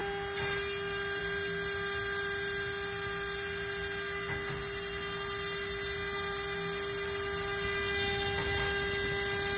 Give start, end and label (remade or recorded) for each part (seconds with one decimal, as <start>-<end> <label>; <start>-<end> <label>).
0.0-9.6 recorded